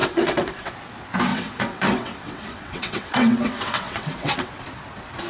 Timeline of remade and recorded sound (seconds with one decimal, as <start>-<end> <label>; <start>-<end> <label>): 0.0-0.7 remade; 0.7-1.3 recorded; 1.3-4.5 remade; 4.5-5.3 recorded